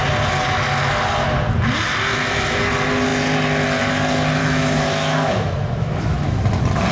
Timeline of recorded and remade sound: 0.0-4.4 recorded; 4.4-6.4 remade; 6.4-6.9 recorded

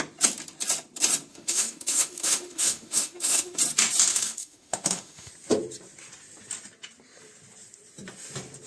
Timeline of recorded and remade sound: 0.0-1.3 recorded; 1.3-3.6 remade; 3.6-4.1 recorded; 4.1-5.3 remade; 5.3-8.7 recorded

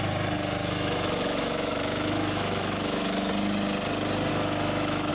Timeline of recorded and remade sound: 0.0-0.6 recorded; 0.6-3.3 remade; 3.3-4.3 recorded; 4.3-5.1 remade

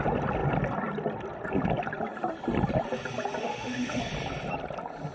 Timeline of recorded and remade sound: 0.0-3.4 recorded; 3.4-4.0 remade; 4.0-5.1 recorded

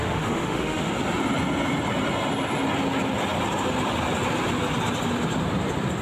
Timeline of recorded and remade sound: 0.0-0.9 remade; 0.9-6.0 recorded

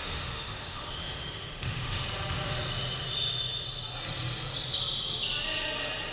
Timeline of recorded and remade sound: 0.0-2.0 remade; 2.0-6.1 recorded

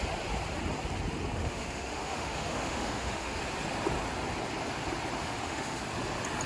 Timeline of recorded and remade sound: 0.0-1.4 recorded; 1.4-3.4 remade; 3.4-5.2 recorded; 5.2-5.8 remade; 5.8-6.5 recorded

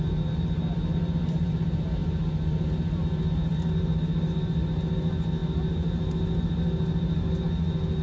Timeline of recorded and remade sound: 0.0-8.0 recorded